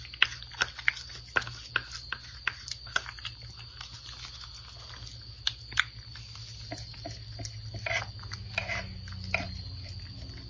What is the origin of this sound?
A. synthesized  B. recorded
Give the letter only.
B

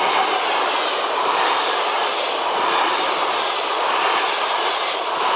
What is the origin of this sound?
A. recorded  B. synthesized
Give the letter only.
A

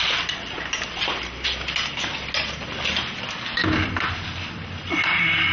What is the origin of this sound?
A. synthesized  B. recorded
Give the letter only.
B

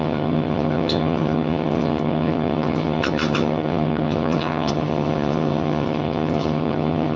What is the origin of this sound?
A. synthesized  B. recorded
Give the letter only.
A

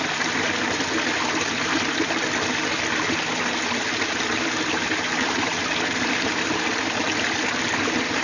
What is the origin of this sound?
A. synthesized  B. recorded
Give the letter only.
B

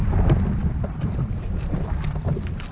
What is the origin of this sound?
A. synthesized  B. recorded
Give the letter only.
B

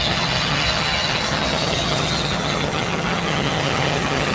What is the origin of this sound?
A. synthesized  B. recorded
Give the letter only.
A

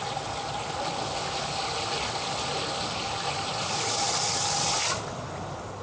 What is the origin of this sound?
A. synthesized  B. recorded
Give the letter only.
B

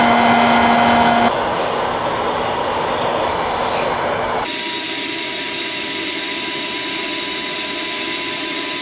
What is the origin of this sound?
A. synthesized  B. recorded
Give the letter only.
B